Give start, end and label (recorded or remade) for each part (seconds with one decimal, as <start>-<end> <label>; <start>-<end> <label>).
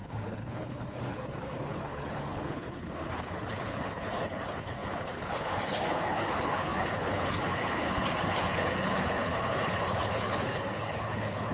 0.0-11.5 remade